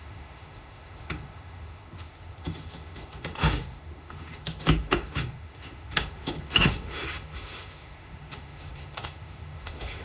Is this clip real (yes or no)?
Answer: no